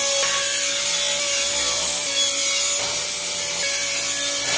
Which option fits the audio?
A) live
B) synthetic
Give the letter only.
A